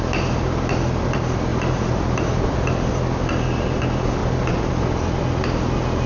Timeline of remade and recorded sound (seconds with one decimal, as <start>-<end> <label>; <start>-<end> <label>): 0.0-1.5 recorded; 1.5-2.9 remade; 2.9-6.1 recorded

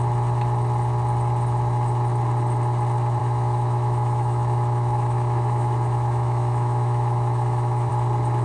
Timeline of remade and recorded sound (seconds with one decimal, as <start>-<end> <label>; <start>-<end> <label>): 0.0-3.2 recorded; 3.2-7.9 remade; 7.9-8.4 recorded

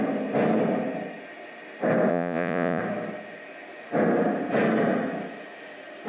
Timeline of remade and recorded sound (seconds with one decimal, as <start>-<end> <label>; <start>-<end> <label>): 0.0-2.1 recorded; 2.1-2.8 remade; 2.8-6.1 recorded

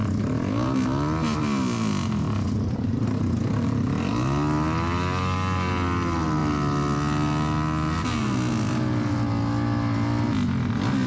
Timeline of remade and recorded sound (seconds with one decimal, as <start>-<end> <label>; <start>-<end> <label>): 0.0-11.1 recorded

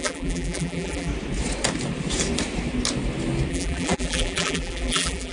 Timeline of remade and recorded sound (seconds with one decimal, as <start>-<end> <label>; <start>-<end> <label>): 0.0-1.1 remade; 1.1-3.5 recorded; 3.5-5.3 remade